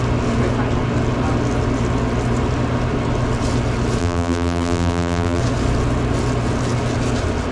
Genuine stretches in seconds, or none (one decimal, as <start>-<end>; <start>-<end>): 0.0-4.0; 5.4-7.5